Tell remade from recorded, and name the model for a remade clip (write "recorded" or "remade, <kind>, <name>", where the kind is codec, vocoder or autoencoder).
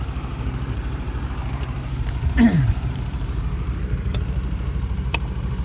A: remade, vocoder, BigVGAN v2